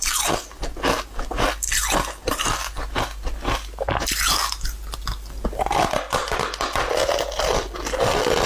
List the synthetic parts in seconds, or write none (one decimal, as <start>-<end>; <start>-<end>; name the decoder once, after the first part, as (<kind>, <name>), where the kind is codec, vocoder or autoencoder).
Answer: none